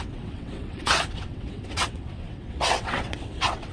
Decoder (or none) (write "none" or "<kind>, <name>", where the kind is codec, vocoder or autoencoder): vocoder, WaveNeXt